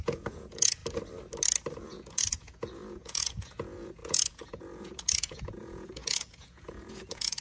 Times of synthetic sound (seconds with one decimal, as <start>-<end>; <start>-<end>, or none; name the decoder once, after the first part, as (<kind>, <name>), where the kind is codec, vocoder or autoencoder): 0.0-0.8 (vocoder, Vocos); 1.8-7.4